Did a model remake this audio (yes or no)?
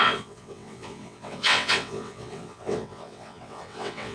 yes